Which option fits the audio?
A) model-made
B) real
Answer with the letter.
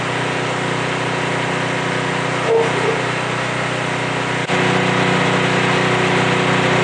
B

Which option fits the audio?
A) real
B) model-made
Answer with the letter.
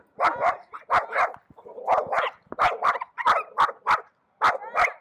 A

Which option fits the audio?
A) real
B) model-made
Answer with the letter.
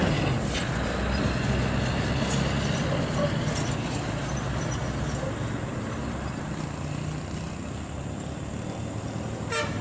A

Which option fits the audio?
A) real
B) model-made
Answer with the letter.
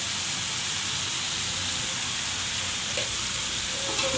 A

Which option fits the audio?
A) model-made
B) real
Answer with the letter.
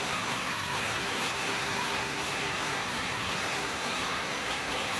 A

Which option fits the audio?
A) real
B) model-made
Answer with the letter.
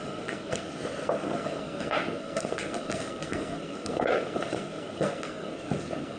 B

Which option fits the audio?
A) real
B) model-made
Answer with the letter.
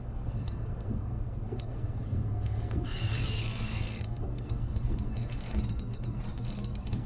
B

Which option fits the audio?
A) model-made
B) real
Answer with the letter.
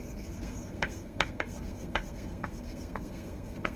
A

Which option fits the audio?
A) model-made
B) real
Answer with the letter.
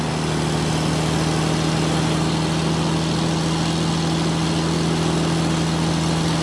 B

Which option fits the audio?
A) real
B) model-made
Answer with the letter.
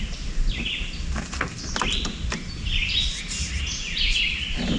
A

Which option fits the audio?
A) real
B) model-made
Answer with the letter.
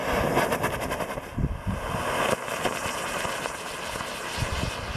A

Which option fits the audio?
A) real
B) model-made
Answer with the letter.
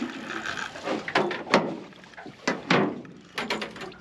A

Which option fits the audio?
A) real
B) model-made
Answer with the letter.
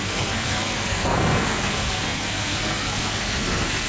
B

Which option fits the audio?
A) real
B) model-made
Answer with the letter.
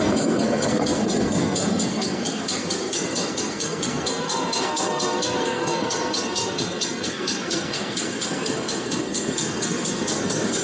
B